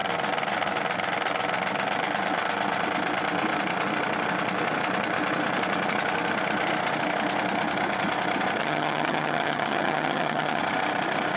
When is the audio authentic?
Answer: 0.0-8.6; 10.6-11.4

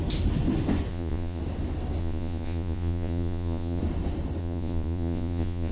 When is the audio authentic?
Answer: 0.0-0.9; 1.4-2.0; 3.8-4.4